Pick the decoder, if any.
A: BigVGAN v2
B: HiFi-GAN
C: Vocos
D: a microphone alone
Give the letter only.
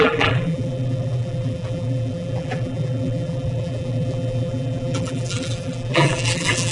A